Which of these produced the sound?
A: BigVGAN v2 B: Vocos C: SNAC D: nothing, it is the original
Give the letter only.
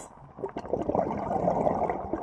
D